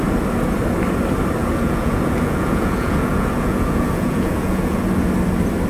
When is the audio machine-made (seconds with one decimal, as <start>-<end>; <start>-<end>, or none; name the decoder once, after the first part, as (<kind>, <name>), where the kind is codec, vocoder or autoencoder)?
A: 1.4-4.8 (vocoder, Vocos)